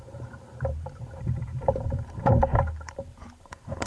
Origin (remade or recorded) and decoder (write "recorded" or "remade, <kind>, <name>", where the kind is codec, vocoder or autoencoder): remade, vocoder, BigVGAN v2